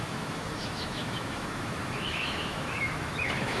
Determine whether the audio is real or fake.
fake